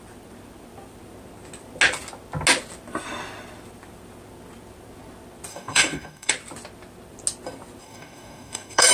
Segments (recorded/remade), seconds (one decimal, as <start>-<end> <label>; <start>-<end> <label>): 0.0-5.5 recorded; 5.5-6.3 remade; 6.3-7.8 recorded; 7.8-8.9 remade